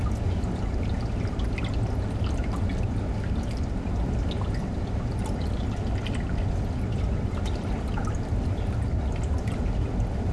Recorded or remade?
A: remade